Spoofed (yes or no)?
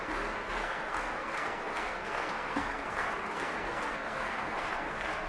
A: yes